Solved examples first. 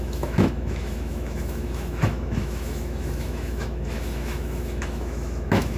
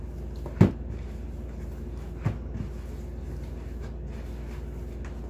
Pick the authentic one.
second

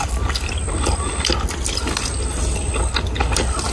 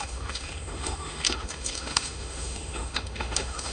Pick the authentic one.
first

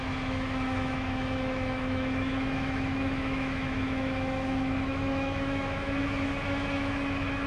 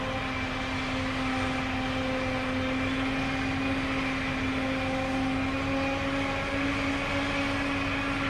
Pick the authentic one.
second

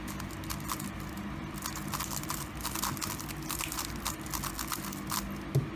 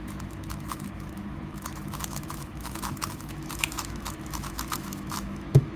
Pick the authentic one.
first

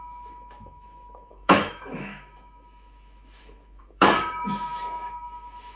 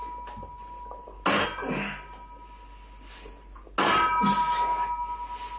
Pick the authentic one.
second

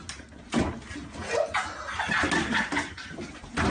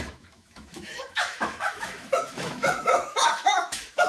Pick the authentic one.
first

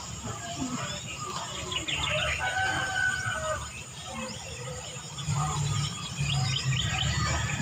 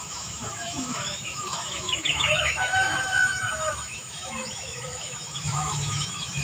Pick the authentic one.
first